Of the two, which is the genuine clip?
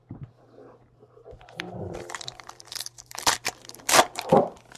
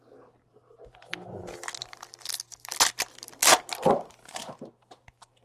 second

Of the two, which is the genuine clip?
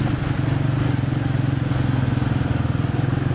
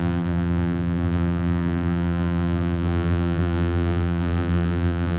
first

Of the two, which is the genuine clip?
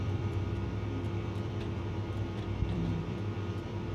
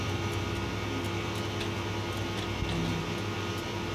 second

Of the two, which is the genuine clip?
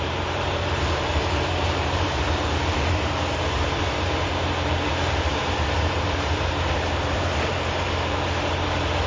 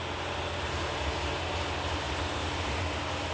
second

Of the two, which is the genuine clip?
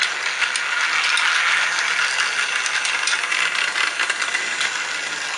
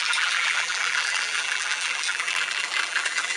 first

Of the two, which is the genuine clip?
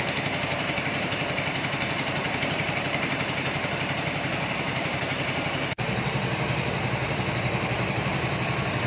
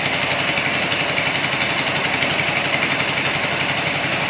second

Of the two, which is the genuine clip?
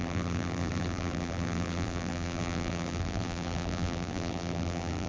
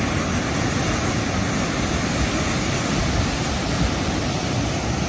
second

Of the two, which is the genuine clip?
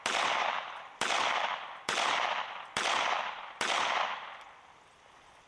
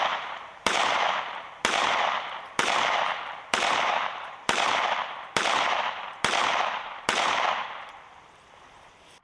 first